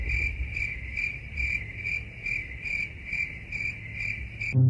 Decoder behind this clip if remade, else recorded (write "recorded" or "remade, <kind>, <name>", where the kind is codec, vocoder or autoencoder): recorded